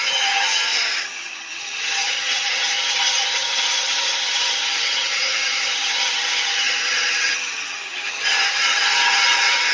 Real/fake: fake